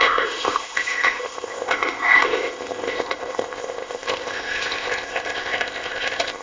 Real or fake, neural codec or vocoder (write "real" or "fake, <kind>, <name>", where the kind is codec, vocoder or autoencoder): fake, codec, ZipCodec